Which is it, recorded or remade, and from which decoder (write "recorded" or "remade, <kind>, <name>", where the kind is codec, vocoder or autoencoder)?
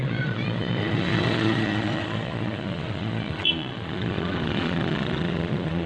remade, vocoder, Vocos